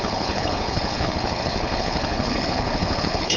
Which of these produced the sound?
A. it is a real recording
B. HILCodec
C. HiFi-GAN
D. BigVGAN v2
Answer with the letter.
B